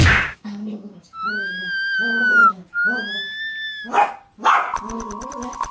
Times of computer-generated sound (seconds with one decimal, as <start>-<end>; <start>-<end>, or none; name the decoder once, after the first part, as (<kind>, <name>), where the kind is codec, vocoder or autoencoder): 0.0-1.3 (codec, DAC)